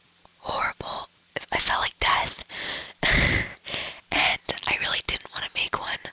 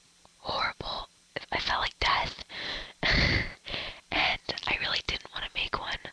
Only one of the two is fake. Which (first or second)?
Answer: second